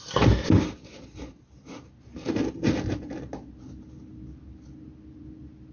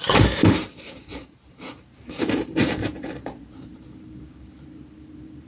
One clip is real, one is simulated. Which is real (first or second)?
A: first